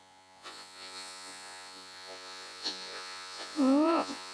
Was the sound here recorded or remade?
remade